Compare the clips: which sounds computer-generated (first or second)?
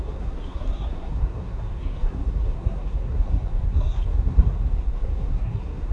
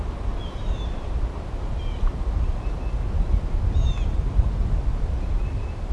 first